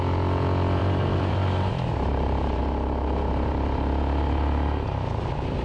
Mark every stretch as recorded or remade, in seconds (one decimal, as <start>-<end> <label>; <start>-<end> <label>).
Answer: 0.0-0.8 recorded; 0.8-2.6 remade; 2.6-5.6 recorded